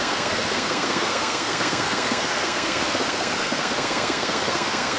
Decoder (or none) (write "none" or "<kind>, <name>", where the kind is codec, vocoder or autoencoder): codec, SNAC